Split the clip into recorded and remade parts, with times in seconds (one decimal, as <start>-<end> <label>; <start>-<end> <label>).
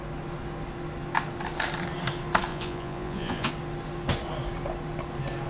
0.0-2.5 recorded; 2.5-3.5 remade; 3.5-5.5 recorded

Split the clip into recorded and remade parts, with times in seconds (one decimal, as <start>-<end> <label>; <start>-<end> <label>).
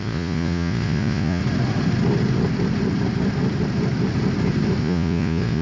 0.0-1.4 remade; 1.4-4.8 recorded; 4.8-5.6 remade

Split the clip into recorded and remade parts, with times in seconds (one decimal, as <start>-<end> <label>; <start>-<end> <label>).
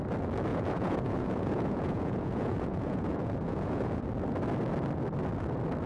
0.0-0.5 recorded; 0.5-4.0 remade; 4.0-5.9 recorded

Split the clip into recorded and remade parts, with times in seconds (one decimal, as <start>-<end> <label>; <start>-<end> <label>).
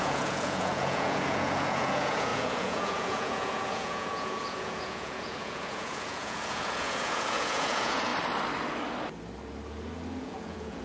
0.0-8.1 remade; 8.1-10.2 recorded; 10.2-10.8 remade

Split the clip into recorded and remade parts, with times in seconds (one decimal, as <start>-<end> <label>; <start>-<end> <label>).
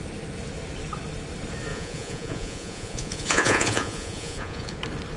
0.0-1.7 recorded; 1.7-4.8 remade; 4.8-5.2 recorded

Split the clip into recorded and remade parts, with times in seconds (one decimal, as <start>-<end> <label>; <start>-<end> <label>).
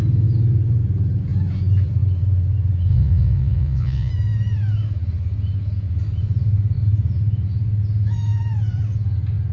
0.0-2.9 recorded; 2.9-4.1 remade; 4.1-9.5 recorded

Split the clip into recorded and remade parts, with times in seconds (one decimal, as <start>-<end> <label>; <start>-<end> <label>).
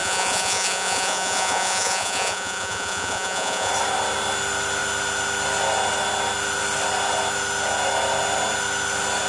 0.0-3.7 remade; 3.7-9.3 recorded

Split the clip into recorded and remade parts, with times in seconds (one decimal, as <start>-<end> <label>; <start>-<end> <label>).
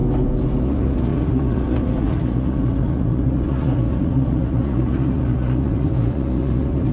0.0-0.6 recorded; 0.6-6.9 remade